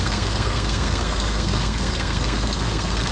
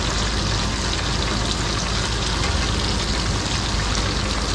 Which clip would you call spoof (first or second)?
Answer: first